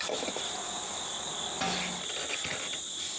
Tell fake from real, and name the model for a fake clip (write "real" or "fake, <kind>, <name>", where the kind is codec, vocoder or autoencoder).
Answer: real